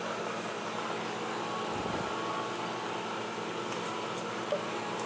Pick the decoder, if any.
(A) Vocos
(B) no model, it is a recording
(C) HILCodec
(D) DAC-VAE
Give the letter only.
B